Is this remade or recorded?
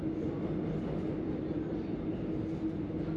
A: recorded